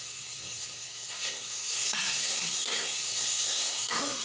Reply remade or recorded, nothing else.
remade